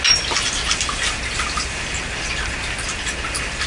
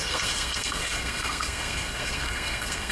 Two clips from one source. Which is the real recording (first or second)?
first